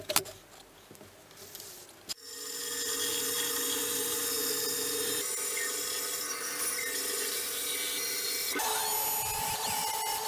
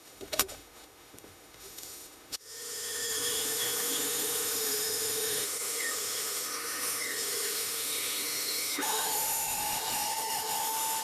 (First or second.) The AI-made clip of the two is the second